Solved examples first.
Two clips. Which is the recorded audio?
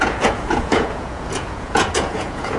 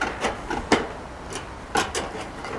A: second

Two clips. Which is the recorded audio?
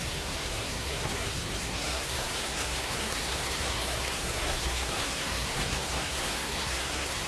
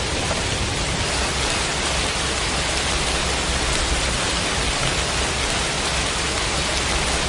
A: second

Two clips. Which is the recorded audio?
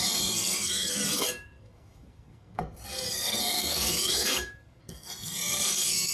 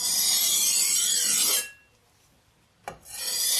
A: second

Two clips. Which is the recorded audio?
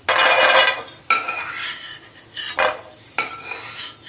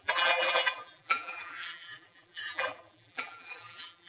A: first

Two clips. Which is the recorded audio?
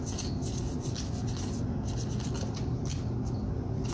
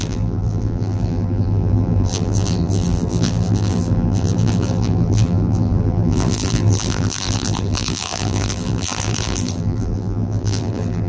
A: first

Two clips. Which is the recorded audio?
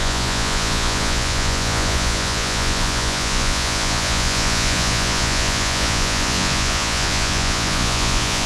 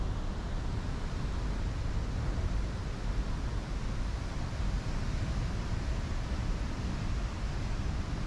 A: second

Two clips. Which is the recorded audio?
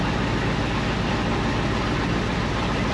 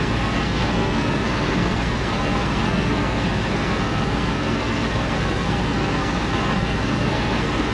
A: first